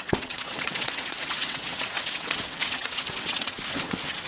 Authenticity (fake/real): fake